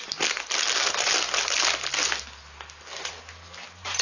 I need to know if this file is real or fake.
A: real